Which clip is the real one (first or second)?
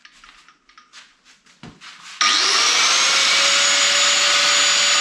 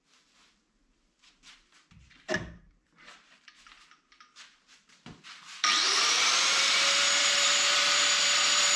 first